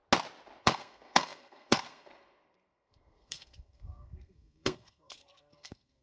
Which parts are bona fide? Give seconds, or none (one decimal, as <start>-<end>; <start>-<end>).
0.0-0.6